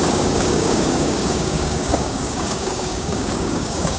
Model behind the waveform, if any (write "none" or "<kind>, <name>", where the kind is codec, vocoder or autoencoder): codec, DAC